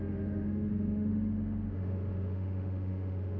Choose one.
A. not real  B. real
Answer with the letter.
A